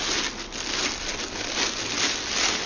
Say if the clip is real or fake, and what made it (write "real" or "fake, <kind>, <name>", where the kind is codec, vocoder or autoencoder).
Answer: real